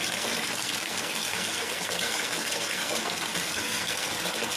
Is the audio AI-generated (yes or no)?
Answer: yes